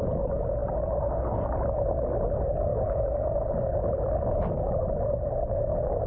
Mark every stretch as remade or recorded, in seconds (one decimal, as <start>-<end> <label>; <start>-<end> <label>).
0.0-2.7 recorded; 2.7-3.3 remade; 3.3-6.1 recorded